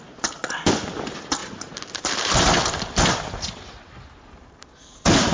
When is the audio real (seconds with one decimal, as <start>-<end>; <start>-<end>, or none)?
0.0-1.4; 2.4-5.3